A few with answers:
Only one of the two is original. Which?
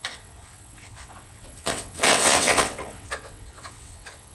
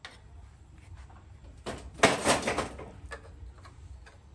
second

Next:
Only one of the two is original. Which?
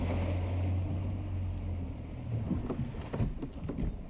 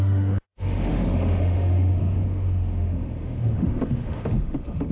first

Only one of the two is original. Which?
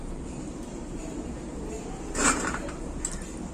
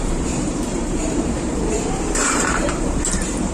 first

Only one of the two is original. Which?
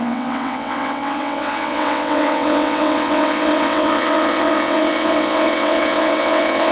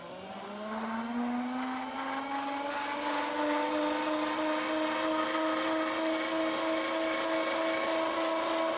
second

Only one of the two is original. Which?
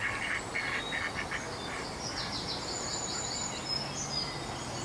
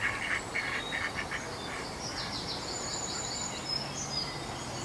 first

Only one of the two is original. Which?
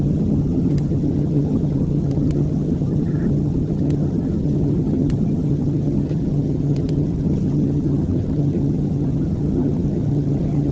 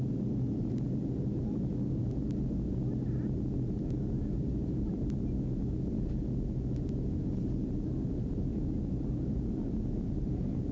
second